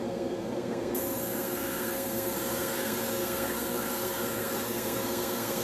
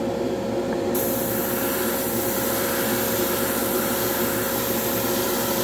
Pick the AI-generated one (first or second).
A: first